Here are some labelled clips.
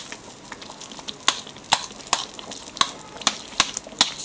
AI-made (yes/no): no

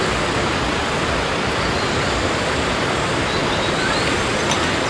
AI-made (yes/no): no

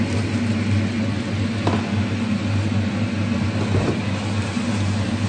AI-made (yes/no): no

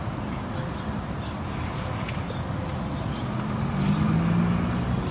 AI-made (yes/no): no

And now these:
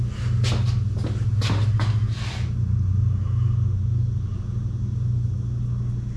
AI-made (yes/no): no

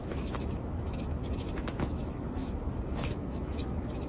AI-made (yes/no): yes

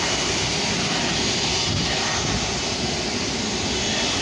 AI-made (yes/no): no